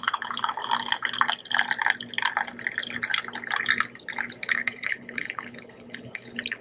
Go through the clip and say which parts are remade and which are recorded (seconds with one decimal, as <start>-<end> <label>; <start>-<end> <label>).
0.0-0.6 remade; 0.6-4.4 recorded; 4.4-6.6 remade